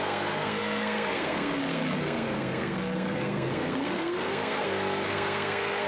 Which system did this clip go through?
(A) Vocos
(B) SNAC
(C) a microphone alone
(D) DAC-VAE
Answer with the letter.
B